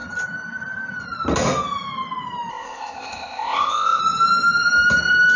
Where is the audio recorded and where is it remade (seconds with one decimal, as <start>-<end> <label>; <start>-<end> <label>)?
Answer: 0.0-2.5 recorded; 2.5-4.0 remade; 4.0-5.4 recorded